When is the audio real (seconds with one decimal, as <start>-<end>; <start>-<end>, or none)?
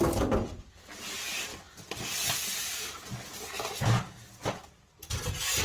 0.0-5.6